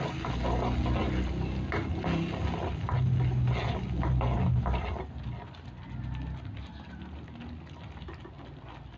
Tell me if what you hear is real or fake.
real